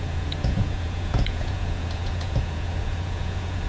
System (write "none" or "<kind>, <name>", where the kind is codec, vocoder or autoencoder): vocoder, Vocos